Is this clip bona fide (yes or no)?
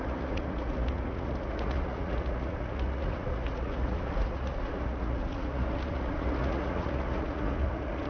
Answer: no